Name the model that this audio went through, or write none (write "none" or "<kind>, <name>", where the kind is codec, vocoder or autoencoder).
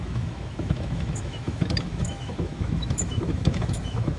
autoencoder, DAC-VAE